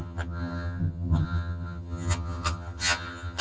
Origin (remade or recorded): remade